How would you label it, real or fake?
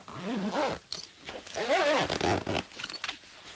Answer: real